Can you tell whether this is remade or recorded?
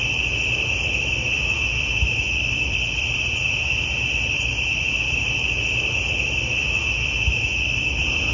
recorded